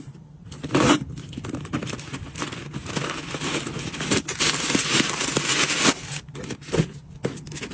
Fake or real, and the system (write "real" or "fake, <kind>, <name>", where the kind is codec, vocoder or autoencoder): real